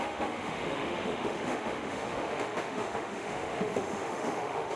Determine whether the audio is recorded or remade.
remade